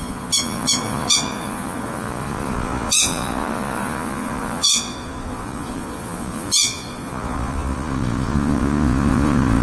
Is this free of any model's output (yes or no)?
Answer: no